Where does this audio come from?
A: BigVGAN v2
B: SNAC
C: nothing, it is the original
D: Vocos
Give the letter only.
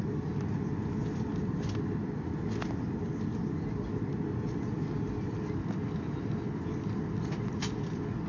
C